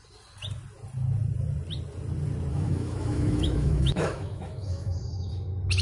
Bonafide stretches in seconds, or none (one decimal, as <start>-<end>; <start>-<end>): 0.0-2.5; 5.3-5.8